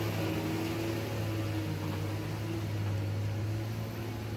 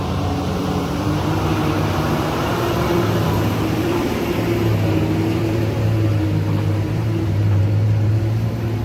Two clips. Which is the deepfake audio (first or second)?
second